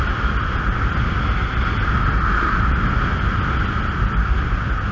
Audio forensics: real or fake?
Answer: real